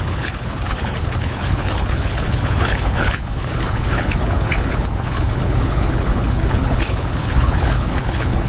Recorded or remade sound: remade